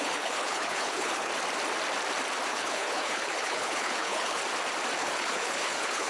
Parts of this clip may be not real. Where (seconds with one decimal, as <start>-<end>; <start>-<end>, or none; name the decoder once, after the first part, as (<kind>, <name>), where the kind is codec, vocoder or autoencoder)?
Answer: 0.0-1.3 (codec, HILCodec); 2.5-4.4; 5.0-6.1